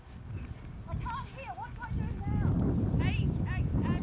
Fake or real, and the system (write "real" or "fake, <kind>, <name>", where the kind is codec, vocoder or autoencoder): real